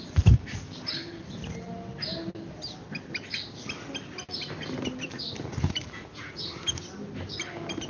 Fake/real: real